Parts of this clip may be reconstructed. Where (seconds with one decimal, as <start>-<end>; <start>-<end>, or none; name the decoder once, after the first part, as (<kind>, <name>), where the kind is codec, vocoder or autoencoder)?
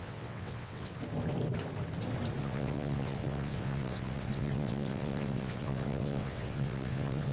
0.0-0.9 (vocoder, WaveNeXt); 2.4-7.3